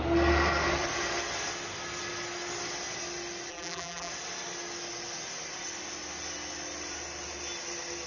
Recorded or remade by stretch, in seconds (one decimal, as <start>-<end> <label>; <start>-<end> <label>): 0.0-3.5 recorded; 3.5-4.1 remade; 4.1-8.1 recorded